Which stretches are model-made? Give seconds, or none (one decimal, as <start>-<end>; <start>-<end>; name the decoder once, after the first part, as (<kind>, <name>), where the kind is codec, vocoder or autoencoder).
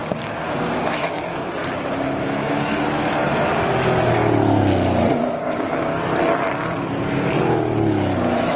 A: 0.0-3.1 (codec, DAC); 5.1-6.0